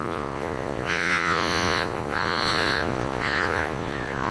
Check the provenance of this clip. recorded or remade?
remade